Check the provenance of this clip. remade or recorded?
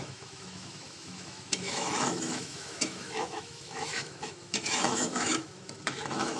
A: remade